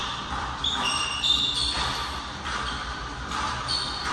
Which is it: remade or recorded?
remade